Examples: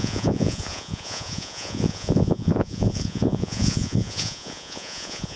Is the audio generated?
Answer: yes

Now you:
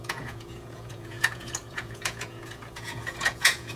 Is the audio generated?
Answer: yes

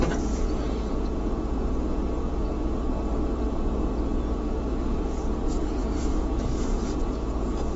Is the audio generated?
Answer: yes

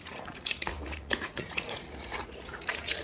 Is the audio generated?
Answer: yes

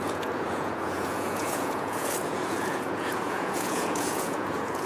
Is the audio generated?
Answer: yes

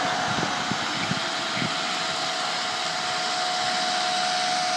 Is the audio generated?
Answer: no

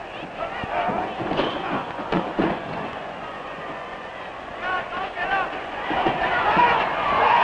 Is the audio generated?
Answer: yes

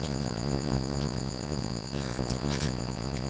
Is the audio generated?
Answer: yes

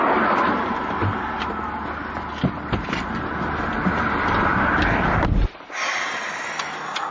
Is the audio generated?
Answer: no